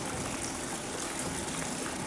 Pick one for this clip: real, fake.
real